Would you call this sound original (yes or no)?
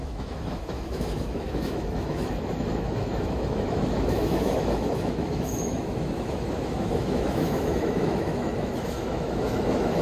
no